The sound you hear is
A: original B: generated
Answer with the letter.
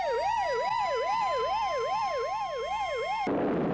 A